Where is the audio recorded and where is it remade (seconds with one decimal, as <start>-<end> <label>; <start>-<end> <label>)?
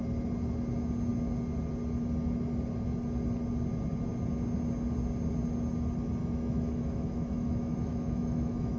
0.0-6.2 recorded; 6.2-8.8 remade